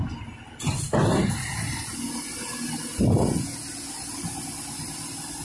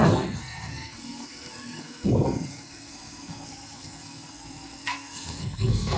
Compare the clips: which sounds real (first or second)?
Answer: first